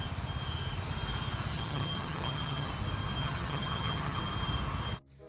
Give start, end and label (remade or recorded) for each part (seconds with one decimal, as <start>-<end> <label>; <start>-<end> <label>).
0.0-1.5 recorded; 1.5-2.7 remade; 2.7-3.2 recorded; 3.2-4.2 remade; 4.2-5.3 recorded